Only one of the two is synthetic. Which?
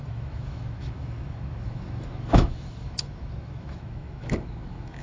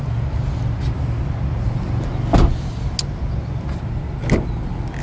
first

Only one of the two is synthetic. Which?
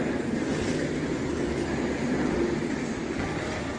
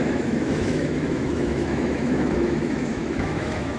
second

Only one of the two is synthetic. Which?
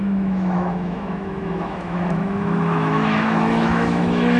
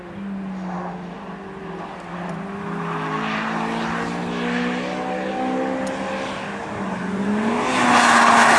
first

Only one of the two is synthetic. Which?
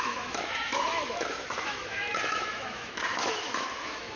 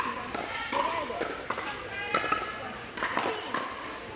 first